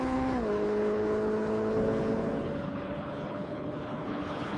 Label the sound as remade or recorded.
remade